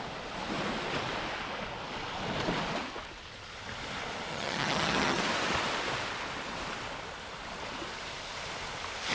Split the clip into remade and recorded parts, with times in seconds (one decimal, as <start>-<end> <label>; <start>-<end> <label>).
0.0-4.3 recorded; 4.3-5.2 remade; 5.2-9.1 recorded